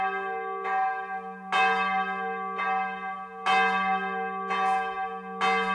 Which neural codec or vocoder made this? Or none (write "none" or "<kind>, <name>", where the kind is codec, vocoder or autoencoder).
none